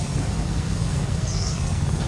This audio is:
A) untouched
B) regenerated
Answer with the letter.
B